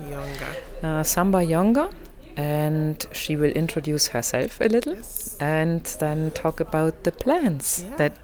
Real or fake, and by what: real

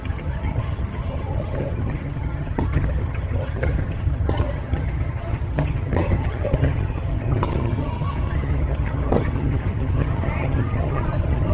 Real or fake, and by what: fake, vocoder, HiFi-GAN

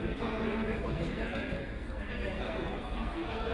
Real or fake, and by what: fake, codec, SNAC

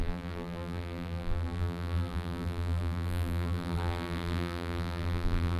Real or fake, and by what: fake, vocoder, BigVGAN v2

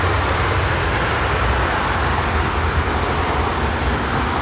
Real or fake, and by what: real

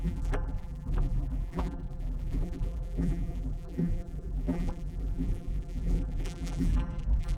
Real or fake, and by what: fake, vocoder, BigVGAN v2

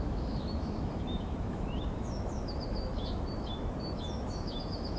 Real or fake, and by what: fake, autoencoder, DAC-VAE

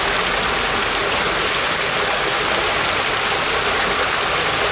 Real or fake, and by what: real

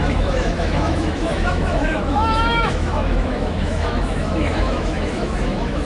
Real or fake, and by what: fake, autoencoder, DAC-VAE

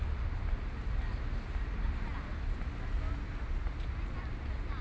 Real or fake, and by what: real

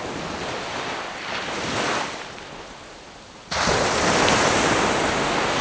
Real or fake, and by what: real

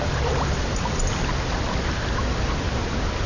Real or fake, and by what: real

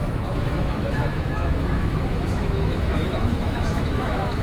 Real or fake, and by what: fake, autoencoder, DAC-VAE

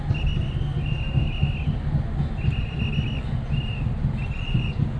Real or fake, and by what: real